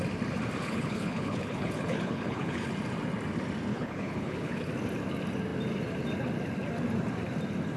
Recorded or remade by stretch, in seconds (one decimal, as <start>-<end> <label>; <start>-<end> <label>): 0.0-0.7 recorded; 0.7-2.7 remade; 2.7-3.7 recorded; 3.7-4.7 remade; 4.7-7.8 recorded